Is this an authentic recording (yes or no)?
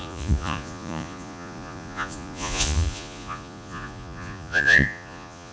no